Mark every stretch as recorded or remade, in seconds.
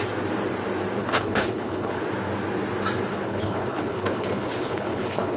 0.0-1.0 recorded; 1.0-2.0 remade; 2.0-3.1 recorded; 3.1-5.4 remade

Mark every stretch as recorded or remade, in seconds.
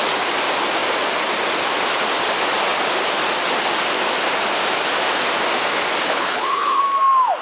0.0-6.0 recorded; 6.0-6.8 remade; 6.8-7.4 recorded